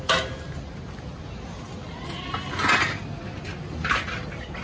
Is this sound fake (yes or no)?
no